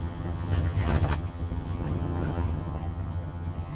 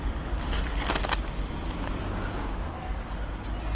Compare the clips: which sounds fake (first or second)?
first